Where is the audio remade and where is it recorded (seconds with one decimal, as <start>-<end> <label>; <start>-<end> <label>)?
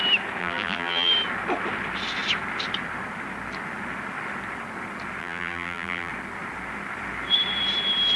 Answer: 0.0-0.4 recorded; 0.4-1.1 remade; 1.1-5.2 recorded; 5.2-6.1 remade; 6.1-8.2 recorded